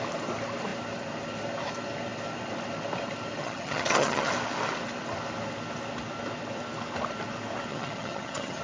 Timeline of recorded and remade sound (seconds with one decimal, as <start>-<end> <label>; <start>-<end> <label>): 0.0-3.4 recorded; 3.4-4.3 remade; 4.3-7.7 recorded; 7.7-8.6 remade